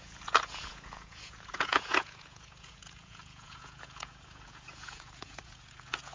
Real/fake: fake